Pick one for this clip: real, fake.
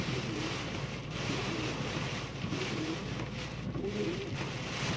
fake